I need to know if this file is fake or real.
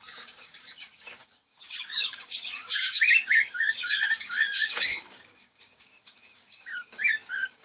fake